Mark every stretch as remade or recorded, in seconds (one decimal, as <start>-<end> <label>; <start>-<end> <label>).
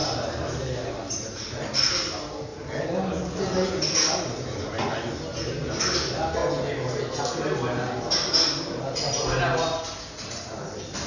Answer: 0.0-0.9 remade; 0.9-11.1 recorded